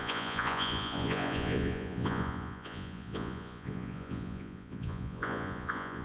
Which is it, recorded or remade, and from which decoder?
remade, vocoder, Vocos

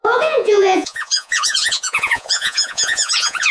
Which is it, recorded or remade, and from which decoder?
remade, vocoder, Vocos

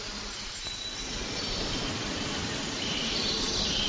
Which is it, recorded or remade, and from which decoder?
recorded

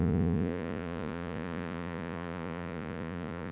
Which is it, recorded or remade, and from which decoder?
remade, vocoder, Vocos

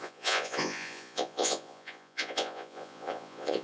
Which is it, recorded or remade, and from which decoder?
remade, vocoder, Vocos